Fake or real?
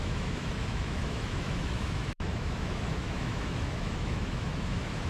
fake